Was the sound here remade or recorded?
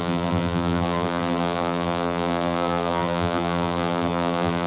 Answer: remade